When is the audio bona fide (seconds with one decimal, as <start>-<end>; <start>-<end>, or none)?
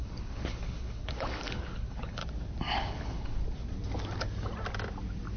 2.2-2.8; 3.4-5.4